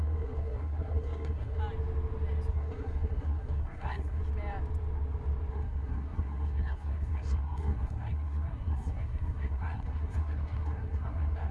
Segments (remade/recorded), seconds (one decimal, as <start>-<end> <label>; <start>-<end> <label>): 0.0-1.6 remade; 1.6-2.5 recorded; 2.5-4.2 remade; 4.2-5.5 recorded; 5.5-11.5 remade